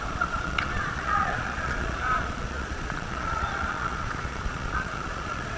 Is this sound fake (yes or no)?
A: yes